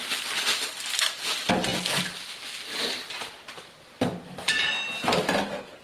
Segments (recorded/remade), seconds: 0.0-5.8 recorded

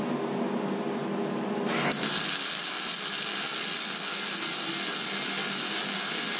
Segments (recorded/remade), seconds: 0.0-6.4 recorded

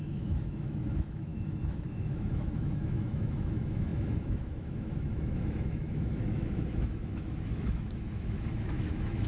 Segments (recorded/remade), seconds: 0.0-9.3 remade

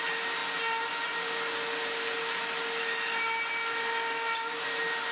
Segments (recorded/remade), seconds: 0.0-5.1 recorded

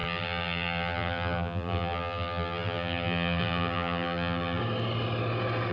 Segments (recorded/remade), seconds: 0.0-4.6 remade; 4.6-5.7 recorded